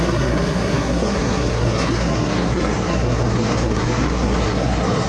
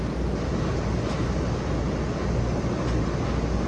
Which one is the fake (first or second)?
first